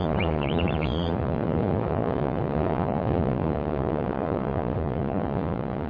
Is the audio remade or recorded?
remade